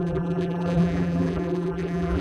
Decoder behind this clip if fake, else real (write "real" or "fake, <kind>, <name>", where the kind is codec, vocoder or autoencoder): fake, vocoder, BigVGAN v2